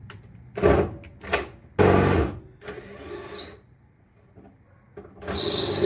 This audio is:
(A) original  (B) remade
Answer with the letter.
A